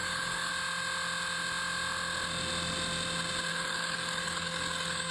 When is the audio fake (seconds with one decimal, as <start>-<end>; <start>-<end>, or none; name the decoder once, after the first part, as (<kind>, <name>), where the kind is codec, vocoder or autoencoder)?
0.0-0.5 (codec, DAC); 3.5-5.1